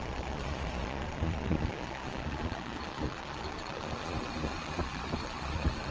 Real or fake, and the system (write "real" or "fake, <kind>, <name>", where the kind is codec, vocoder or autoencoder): fake, vocoder, Vocos